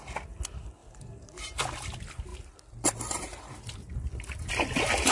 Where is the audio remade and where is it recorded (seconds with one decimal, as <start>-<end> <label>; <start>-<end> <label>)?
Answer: 0.0-5.1 recorded